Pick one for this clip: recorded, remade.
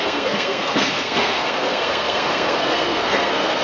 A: remade